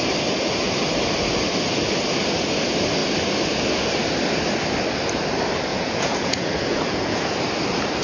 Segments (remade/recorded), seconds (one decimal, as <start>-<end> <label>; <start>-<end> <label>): 0.0-5.7 recorded; 5.7-7.4 remade; 7.4-8.0 recorded